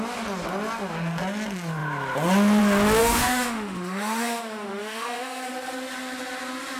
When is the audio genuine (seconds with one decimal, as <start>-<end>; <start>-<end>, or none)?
0.0-3.0; 5.5-6.8